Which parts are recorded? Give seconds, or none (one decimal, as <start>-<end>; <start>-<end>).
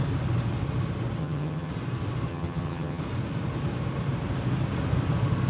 0.0-1.2; 1.7-2.3; 3.0-5.5